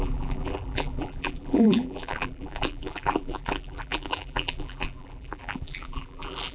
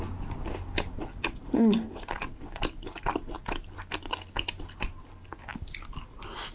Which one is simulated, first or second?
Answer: first